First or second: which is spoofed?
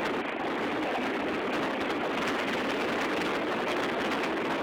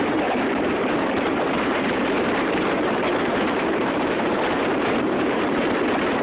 second